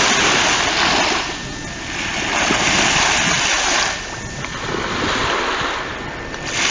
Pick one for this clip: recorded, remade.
recorded